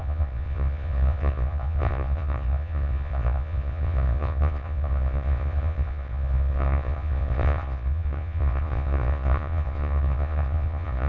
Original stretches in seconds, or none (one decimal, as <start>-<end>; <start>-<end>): none